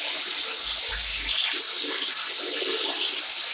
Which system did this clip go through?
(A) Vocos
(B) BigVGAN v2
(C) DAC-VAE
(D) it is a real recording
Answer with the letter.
D